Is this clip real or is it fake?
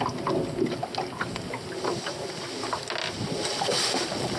real